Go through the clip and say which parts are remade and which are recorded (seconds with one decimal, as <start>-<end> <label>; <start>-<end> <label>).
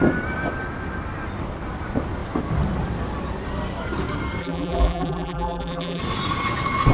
0.0-4.4 recorded; 4.4-6.0 remade; 6.0-6.9 recorded